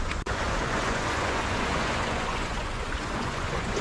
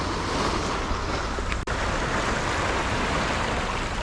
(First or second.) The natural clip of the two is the second